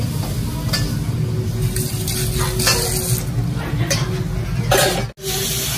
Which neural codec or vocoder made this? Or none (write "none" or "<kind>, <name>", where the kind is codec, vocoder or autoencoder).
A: none